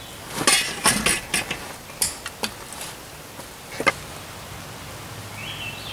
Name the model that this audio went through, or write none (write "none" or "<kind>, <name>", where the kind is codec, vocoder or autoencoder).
none